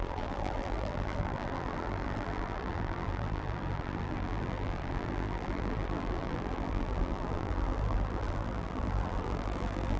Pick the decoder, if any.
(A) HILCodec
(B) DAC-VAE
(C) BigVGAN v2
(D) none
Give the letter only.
C